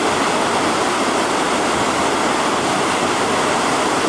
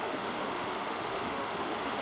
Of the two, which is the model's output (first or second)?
second